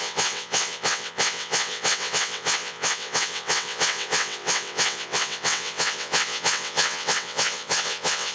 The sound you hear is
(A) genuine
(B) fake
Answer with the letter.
B